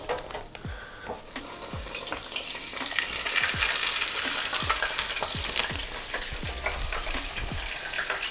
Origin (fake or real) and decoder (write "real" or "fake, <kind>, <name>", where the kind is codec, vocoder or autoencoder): real